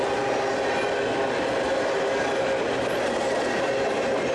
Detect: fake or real real